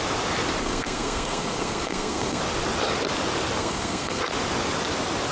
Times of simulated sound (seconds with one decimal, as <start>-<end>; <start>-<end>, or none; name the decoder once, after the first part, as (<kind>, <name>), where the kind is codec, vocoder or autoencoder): 0.6-2.4 (codec, SNAC); 3.6-4.2